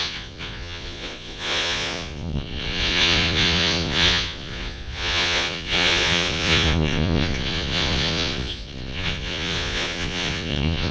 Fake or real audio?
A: fake